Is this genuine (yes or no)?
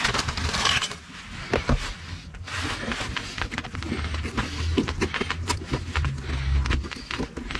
yes